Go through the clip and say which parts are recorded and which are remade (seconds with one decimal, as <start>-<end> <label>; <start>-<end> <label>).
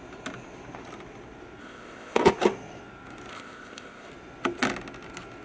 0.0-1.6 recorded; 1.6-2.3 remade; 2.3-3.3 recorded; 3.3-4.1 remade; 4.1-5.4 recorded